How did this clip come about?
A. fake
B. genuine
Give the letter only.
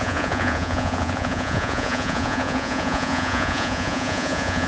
A